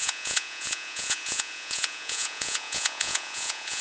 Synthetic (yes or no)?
yes